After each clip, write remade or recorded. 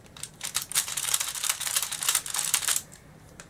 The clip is remade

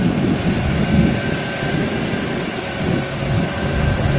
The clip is recorded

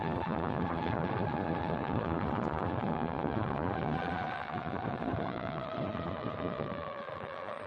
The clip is remade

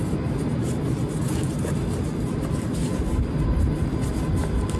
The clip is recorded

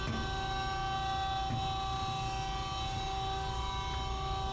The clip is recorded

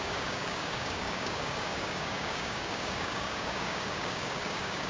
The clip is remade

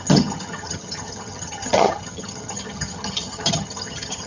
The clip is remade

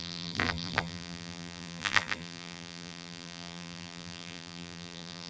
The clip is remade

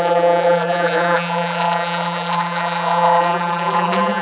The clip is remade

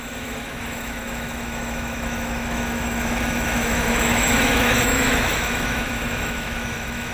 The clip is remade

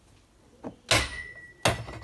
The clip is recorded